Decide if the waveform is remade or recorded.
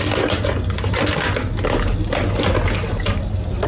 recorded